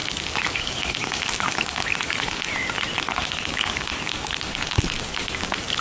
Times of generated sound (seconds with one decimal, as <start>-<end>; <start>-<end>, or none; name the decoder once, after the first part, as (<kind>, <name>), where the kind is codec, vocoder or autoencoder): 0.0-2.5 (codec, DAC); 3.1-5.8